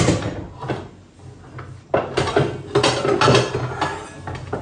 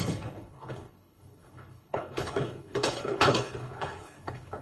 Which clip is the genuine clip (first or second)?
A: first